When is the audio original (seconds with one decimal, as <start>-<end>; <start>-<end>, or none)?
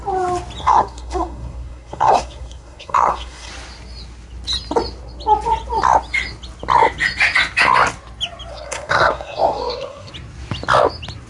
0.0-0.6; 3.5-8.5; 10.1-11.3